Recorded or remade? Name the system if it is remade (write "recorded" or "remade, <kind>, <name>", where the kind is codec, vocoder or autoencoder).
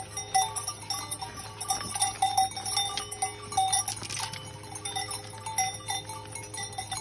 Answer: recorded